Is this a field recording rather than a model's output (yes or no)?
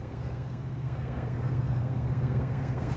no